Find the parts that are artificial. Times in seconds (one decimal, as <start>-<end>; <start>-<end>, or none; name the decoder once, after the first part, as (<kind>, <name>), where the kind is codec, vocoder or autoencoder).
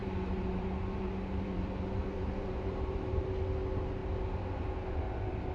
0.0-3.3 (vocoder, BigVGAN v2)